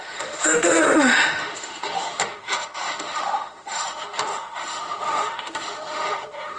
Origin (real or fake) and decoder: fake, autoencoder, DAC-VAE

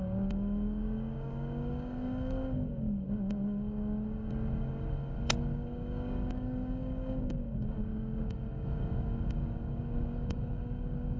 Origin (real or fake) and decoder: fake, codec, DAC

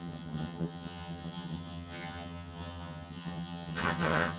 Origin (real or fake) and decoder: fake, vocoder, HiFi-GAN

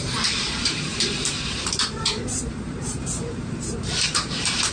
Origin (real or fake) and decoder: fake, vocoder, BigVGAN v2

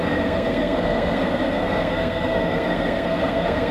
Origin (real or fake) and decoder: fake, codec, SNAC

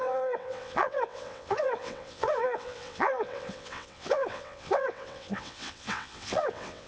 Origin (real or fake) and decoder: fake, vocoder, WaveNeXt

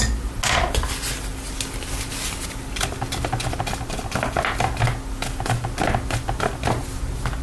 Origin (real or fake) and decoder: real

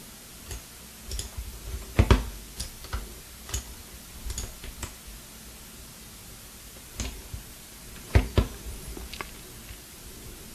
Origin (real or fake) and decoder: real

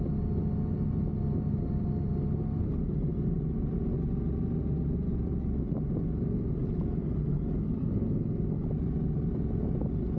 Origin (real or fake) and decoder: real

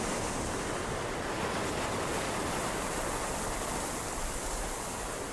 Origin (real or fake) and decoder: fake, vocoder, BigVGAN v2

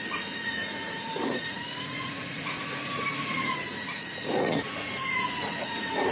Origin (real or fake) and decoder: fake, vocoder, Vocos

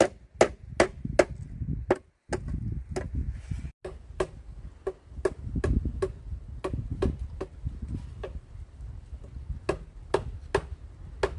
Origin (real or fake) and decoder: real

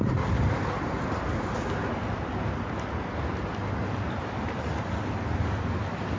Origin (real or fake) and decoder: real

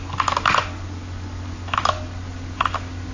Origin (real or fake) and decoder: real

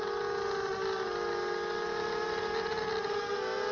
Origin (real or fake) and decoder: real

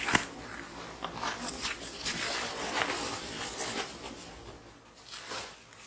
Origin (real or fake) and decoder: real